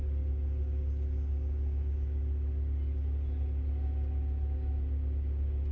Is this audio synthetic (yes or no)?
no